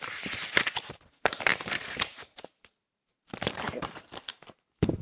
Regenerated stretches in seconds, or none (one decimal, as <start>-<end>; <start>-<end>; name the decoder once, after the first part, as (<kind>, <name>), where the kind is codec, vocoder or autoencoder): 0.0-5.0 (vocoder, BigVGAN v2)